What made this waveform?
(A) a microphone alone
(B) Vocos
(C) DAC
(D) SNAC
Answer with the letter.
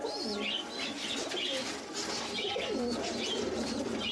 A